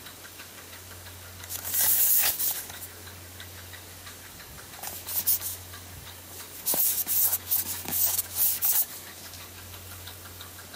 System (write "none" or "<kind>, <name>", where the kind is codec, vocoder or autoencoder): codec, DAC